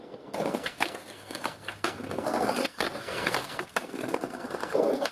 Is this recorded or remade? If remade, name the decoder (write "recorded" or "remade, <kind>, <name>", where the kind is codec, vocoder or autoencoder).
remade, codec, SNAC